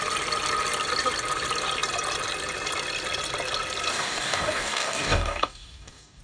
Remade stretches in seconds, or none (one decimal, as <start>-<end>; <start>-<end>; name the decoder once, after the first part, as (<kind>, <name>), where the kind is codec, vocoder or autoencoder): 3.9-6.2 (codec, DAC)